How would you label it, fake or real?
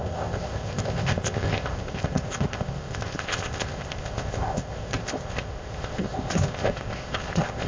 fake